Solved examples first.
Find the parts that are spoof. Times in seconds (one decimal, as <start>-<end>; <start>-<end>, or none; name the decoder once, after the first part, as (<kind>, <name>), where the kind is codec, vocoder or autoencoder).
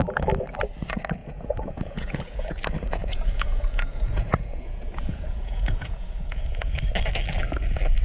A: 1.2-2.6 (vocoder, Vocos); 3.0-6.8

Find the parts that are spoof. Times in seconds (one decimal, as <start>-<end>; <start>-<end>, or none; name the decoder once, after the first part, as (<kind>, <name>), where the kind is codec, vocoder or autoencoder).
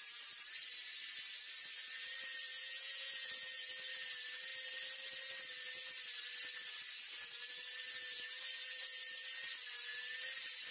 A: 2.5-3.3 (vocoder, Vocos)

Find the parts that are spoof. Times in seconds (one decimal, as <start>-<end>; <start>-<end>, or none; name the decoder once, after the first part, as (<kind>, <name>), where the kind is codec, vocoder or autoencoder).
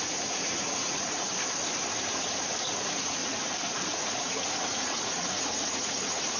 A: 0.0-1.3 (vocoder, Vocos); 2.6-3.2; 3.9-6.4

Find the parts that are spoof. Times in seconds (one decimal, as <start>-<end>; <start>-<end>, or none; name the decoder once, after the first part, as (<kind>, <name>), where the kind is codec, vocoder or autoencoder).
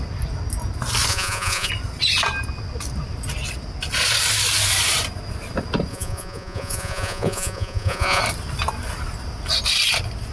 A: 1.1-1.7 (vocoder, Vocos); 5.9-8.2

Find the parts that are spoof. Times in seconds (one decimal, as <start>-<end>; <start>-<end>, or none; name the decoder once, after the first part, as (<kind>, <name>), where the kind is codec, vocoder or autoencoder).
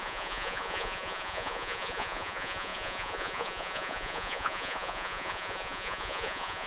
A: 0.0-6.7 (vocoder, Vocos)